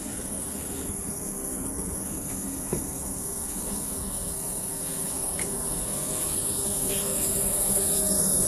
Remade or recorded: remade